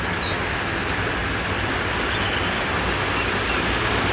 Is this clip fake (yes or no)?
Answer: no